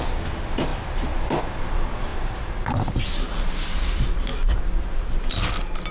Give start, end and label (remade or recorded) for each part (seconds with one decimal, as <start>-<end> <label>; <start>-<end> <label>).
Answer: 0.0-5.9 recorded